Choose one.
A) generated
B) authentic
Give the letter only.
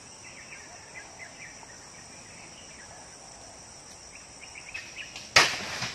B